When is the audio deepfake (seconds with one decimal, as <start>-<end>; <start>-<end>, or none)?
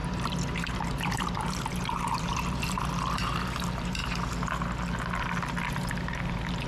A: 0.0-4.0; 5.7-6.7